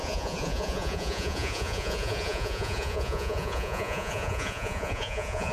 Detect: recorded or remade remade